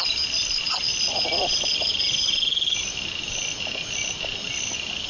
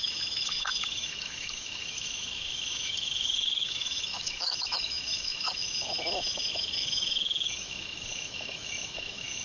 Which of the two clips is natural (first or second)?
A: first